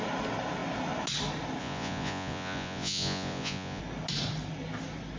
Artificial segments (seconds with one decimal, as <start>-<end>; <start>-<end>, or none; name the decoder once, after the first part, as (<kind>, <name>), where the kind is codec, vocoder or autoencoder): 1.6-3.8 (vocoder, Vocos)